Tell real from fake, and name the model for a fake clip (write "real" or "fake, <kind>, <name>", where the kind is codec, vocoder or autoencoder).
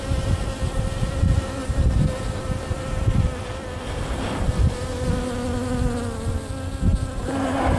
real